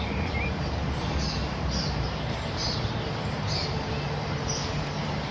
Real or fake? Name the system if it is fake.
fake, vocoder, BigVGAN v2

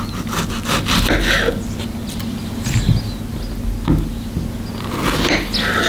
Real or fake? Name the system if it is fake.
real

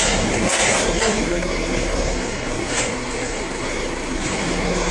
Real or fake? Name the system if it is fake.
fake, codec, SNAC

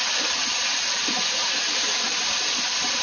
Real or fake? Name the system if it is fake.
real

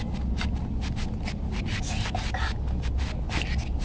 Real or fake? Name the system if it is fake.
real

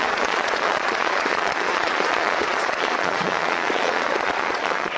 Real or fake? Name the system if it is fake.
fake, vocoder, Vocos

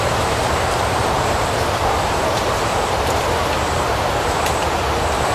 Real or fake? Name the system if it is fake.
fake, vocoder, BigVGAN v2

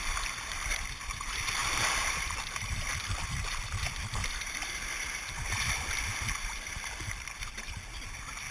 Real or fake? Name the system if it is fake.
fake, vocoder, BigVGAN v2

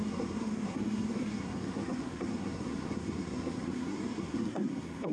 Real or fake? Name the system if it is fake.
fake, codec, SNAC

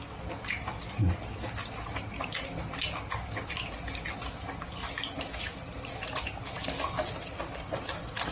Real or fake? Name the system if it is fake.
real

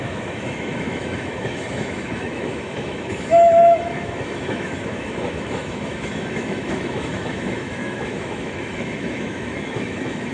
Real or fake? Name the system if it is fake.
fake, autoencoder, DAC-VAE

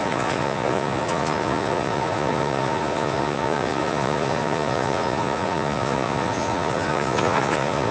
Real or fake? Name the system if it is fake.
fake, vocoder, Vocos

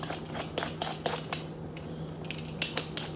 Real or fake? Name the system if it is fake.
real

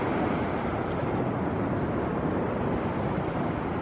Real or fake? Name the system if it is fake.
real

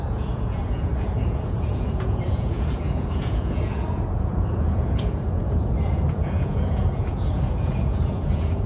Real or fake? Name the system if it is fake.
fake, vocoder, Vocos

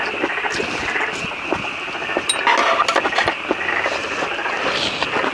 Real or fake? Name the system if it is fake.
real